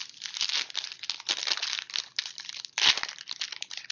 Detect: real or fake real